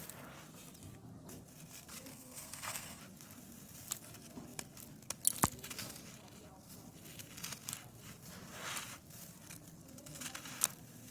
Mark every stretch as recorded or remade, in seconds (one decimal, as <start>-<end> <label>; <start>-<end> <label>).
0.0-2.1 recorded; 2.1-3.0 remade; 3.0-11.1 recorded